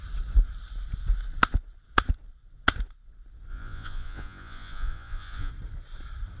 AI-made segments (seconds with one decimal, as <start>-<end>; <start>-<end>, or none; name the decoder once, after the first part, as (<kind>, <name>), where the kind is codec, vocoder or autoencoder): 3.5-5.5 (vocoder, Vocos)

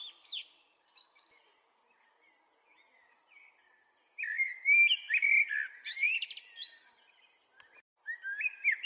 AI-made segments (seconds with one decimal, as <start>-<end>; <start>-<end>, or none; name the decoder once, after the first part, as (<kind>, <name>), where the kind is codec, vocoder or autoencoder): none

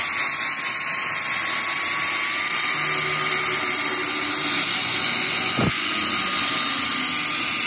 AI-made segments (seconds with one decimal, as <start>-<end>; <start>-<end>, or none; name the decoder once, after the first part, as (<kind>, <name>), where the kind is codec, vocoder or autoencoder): 4.8-5.9 (vocoder, Vocos)

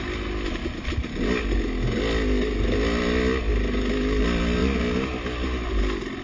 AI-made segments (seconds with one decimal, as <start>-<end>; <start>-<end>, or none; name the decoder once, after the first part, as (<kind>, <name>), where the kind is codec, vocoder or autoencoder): none

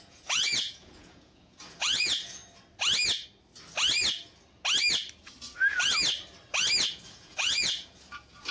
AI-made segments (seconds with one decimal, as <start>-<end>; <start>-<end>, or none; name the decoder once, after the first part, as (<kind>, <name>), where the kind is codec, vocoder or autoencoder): 0.0-2.4 (vocoder, Vocos); 6.9-8.5

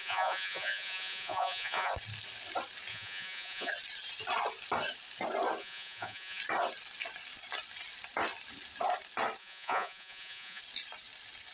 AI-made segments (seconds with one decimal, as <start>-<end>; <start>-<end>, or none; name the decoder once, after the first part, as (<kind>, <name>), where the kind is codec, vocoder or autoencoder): 0.0-1.9 (vocoder, Vocos); 2.9-3.7; 5.6-6.4; 9.4-10.6

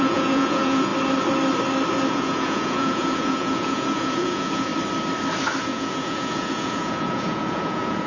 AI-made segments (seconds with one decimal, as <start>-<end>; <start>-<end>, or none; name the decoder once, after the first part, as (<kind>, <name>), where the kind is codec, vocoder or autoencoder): 0.0-0.9 (vocoder, Vocos); 2.1-4.7; 5.6-8.1